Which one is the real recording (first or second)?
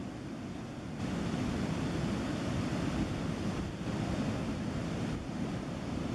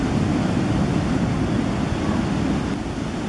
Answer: second